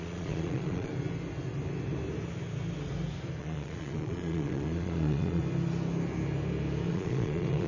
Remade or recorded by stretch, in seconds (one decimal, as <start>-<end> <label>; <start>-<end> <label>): 0.0-0.9 remade; 0.9-3.4 recorded; 3.4-5.4 remade; 5.4-6.9 recorded; 6.9-7.7 remade